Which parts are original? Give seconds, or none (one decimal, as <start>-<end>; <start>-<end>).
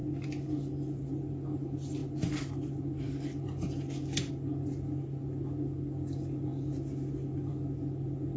0.0-8.4